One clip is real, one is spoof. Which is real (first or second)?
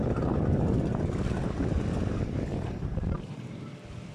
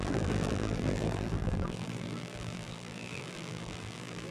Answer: first